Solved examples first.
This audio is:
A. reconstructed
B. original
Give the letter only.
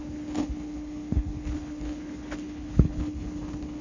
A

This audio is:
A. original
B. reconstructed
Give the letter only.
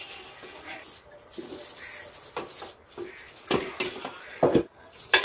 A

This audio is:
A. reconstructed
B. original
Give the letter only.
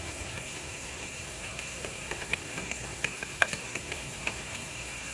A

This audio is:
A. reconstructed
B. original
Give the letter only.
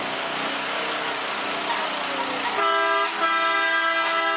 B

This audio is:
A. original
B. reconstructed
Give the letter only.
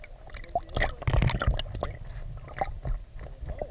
A